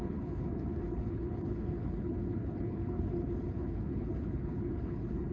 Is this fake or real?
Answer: fake